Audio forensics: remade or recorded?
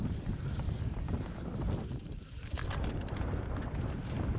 remade